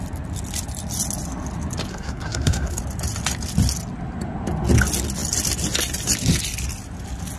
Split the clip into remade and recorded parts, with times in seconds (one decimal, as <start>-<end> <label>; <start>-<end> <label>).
0.0-1.9 recorded; 1.9-2.8 remade; 2.8-7.4 recorded